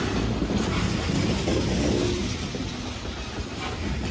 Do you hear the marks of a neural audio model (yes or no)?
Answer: no